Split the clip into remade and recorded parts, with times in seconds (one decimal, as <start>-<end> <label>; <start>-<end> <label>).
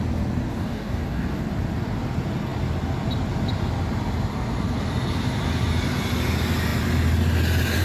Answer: 0.0-0.5 recorded; 0.5-1.4 remade; 1.4-7.8 recorded